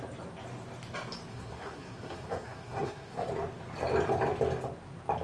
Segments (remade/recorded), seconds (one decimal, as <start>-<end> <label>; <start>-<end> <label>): 0.0-1.3 recorded; 1.3-3.3 remade; 3.3-5.2 recorded